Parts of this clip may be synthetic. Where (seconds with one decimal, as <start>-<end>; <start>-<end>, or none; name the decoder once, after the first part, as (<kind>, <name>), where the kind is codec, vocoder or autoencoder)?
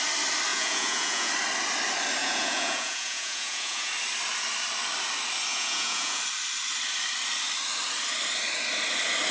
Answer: 0.5-1.3 (vocoder, Vocos); 2.2-3.9; 5.5-6.2